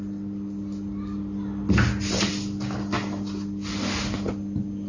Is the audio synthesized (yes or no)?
no